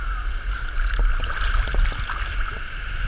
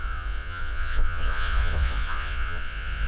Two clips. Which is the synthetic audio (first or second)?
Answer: second